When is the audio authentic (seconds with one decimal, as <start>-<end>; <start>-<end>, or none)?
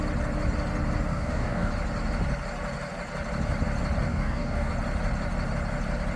0.0-1.1; 1.7-4.1; 4.7-6.2